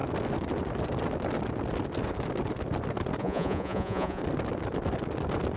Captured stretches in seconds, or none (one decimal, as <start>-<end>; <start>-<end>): 0.0-3.2; 4.2-5.6